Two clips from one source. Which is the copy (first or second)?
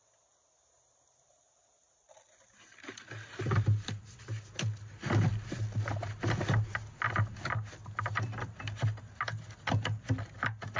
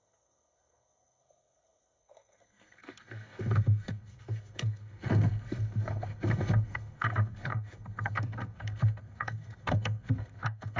second